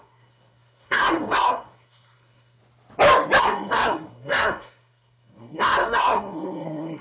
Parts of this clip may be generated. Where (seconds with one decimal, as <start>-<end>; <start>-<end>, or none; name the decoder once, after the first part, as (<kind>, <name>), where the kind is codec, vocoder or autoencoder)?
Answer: 0.0-2.6 (codec, SNAC); 3.4-7.0